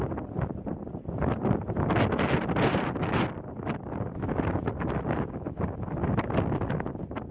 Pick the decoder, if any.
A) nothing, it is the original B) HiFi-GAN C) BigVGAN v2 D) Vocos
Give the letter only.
A